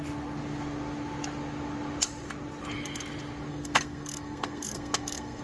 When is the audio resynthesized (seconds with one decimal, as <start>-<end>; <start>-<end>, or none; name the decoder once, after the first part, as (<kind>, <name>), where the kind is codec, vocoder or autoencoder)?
3.5-5.4 (codec, SNAC)